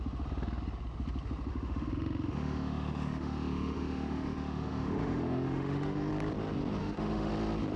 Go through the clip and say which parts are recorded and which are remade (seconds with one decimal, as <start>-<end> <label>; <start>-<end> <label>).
0.0-1.5 recorded; 1.5-6.1 remade; 6.1-6.8 recorded; 6.8-7.3 remade; 7.3-7.8 recorded